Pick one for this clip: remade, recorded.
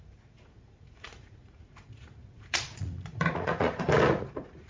remade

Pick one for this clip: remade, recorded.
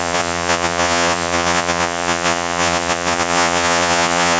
remade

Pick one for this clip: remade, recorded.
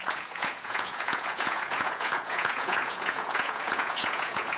remade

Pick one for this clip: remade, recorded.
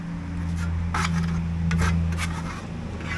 recorded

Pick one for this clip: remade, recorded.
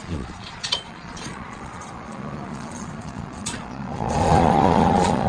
remade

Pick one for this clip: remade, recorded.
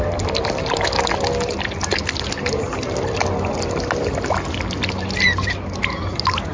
recorded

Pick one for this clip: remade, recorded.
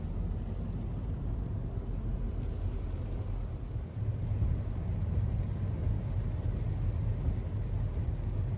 recorded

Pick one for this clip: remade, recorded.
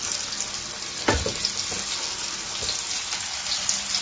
recorded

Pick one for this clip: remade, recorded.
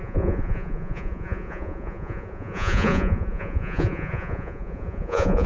remade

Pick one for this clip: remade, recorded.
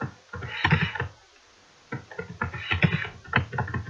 recorded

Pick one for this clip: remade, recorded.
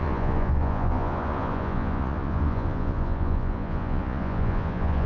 remade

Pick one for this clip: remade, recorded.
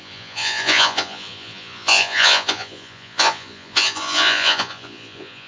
remade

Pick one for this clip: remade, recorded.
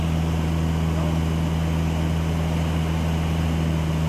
recorded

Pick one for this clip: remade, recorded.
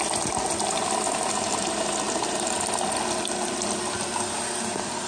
recorded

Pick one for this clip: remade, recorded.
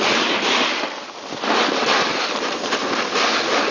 recorded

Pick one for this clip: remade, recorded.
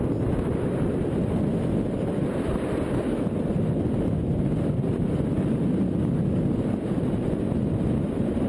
recorded